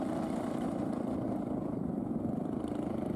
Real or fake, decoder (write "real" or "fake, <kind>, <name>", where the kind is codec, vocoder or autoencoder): real